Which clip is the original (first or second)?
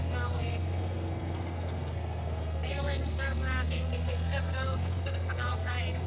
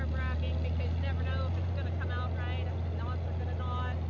second